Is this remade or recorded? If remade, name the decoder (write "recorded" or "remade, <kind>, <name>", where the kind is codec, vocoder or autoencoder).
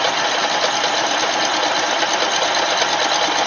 recorded